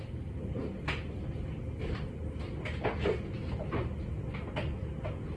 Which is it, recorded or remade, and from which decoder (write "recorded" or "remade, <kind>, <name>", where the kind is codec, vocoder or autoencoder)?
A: recorded